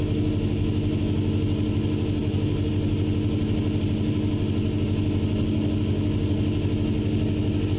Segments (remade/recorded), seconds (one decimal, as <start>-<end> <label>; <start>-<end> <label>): 0.0-7.8 recorded